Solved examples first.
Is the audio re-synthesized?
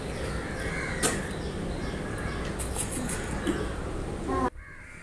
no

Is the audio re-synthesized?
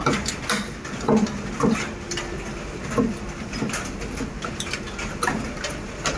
no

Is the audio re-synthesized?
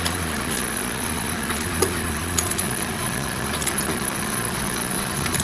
yes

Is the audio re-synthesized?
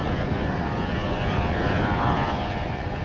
yes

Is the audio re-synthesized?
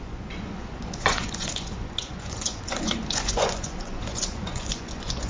yes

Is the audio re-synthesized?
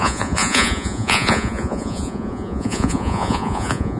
yes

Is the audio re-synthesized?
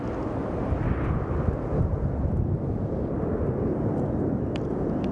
no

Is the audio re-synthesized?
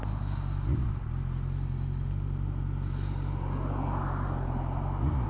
no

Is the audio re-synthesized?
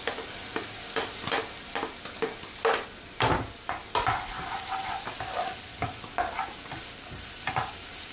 no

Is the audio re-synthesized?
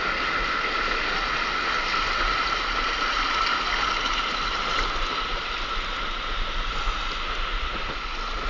no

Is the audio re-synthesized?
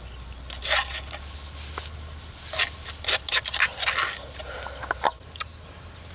no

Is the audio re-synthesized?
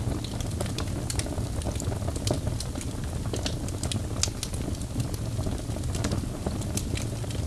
no